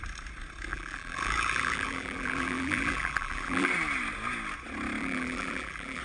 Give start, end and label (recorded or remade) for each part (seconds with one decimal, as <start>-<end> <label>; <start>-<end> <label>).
0.0-0.7 recorded; 0.7-3.7 remade; 3.7-5.0 recorded; 5.0-6.0 remade